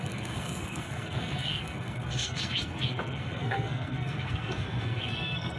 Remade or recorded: remade